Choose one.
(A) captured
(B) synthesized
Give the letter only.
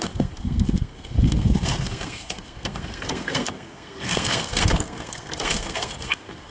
B